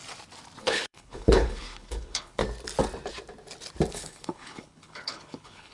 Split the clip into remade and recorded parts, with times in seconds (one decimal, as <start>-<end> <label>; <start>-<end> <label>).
0.0-0.6 recorded; 0.6-2.4 remade; 2.4-3.9 recorded; 3.9-5.7 remade